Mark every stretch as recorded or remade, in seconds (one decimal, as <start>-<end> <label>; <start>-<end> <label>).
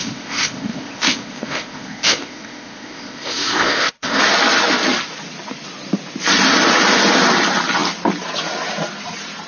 0.0-4.2 remade; 4.2-9.5 recorded